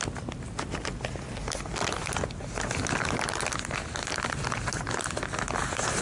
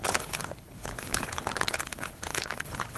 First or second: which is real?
first